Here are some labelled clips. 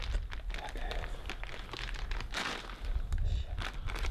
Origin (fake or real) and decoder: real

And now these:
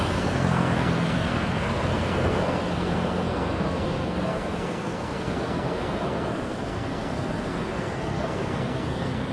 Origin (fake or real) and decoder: fake, codec, SNAC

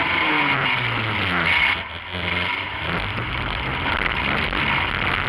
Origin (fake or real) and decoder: real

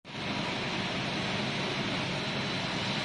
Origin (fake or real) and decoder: real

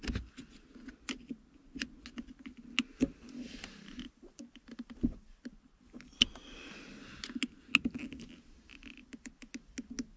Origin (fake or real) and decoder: real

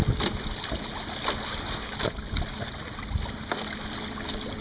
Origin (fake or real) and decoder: real